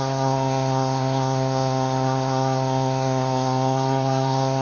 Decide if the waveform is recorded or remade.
remade